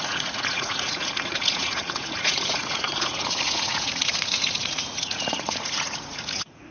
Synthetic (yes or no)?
yes